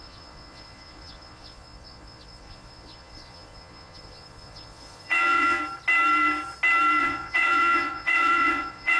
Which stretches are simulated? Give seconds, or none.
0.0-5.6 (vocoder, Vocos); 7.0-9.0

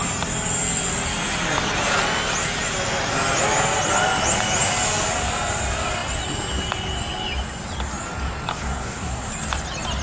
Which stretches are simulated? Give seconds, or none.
8.5-9.3 (codec, SNAC)

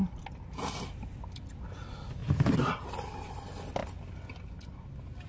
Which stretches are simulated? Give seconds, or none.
none

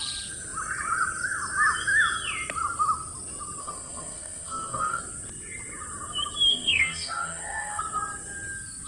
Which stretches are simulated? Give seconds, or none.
3.6-5.0 (codec, SNAC); 6.5-7.8

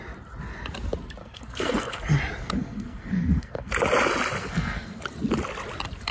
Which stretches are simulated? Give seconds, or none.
1.2-2.0 (codec, SNAC); 2.4-3.7; 4.4-5.0